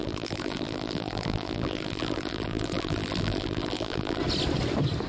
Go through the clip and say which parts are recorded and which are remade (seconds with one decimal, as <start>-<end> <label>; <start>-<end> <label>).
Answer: 0.0-4.2 remade; 4.2-5.1 recorded